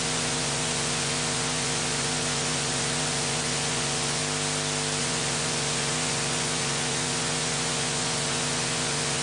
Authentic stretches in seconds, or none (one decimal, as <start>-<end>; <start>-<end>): 4.2-5.0